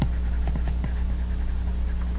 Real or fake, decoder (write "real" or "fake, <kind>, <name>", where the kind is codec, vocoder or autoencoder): real